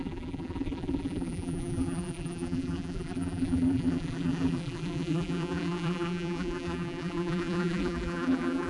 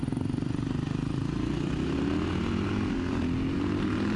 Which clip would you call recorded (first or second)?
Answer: second